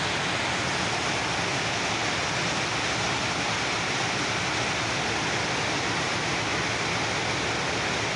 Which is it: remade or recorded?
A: recorded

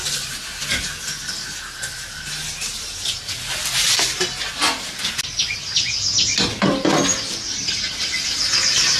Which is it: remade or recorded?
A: recorded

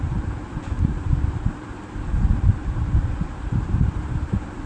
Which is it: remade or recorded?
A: remade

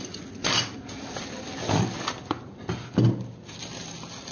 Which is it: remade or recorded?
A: recorded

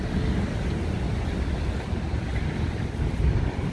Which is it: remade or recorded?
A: recorded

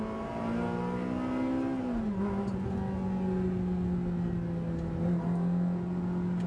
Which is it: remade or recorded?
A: recorded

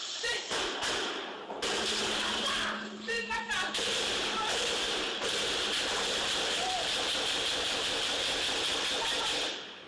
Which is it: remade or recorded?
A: remade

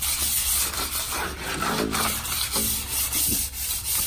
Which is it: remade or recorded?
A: remade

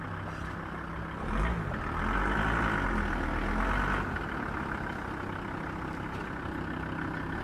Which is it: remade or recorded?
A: recorded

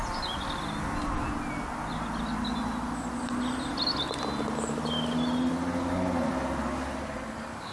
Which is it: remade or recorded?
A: recorded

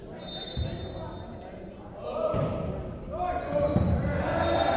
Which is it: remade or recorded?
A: recorded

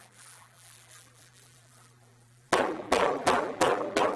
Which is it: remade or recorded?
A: remade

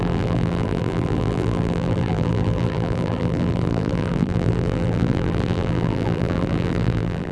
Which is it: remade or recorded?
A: remade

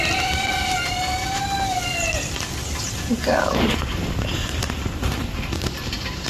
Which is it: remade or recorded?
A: remade